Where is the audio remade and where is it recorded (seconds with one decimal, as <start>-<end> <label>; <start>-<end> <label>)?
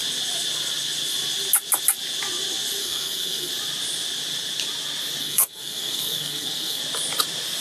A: 0.0-2.8 recorded; 2.8-3.5 remade; 3.5-5.2 recorded; 5.2-6.8 remade; 6.8-7.6 recorded